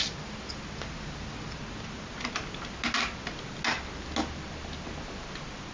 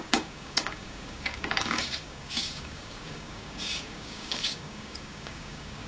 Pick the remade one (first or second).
second